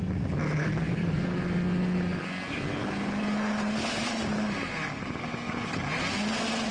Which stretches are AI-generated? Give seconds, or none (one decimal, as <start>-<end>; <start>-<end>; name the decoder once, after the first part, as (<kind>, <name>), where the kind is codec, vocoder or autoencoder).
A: 0.6-1.4 (codec, DAC)

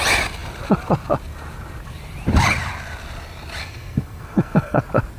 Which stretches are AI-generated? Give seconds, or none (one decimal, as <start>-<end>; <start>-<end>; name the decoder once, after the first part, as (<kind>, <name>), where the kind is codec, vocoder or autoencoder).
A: 3.6-4.8 (codec, SNAC)